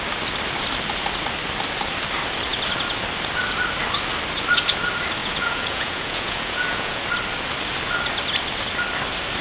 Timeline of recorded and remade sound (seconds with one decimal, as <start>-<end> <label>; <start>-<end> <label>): 0.0-5.2 recorded; 5.2-7.0 remade; 7.0-9.4 recorded